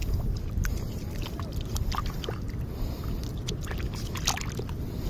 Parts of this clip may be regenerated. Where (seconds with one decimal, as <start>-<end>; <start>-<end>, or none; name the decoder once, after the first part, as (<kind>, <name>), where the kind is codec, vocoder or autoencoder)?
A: none